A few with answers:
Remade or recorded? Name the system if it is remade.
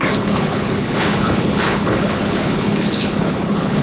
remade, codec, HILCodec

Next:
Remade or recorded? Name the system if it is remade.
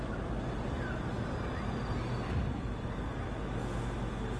recorded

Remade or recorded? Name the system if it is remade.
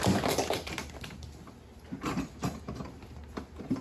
recorded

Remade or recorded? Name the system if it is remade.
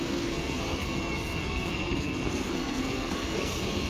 remade, codec, SNAC